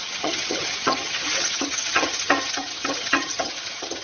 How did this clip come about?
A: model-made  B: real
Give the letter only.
A